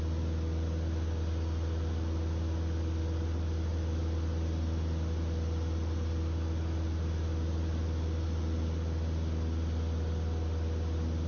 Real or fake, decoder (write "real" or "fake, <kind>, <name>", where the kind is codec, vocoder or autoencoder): real